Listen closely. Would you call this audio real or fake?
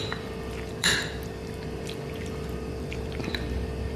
fake